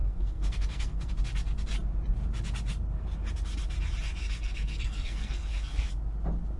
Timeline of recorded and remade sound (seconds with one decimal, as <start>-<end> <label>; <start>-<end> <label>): 0.0-1.1 remade; 1.1-4.2 recorded; 4.2-5.9 remade; 5.9-6.6 recorded